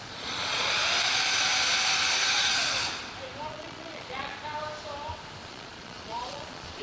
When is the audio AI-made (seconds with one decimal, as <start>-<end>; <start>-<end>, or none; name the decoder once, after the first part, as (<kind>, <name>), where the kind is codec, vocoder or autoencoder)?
0.0-0.8 (vocoder, Vocos); 3.5-4.4; 5.4-6.8